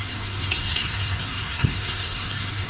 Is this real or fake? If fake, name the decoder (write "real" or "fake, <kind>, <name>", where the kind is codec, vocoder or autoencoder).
fake, codec, SNAC